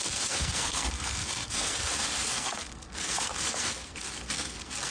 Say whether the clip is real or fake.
fake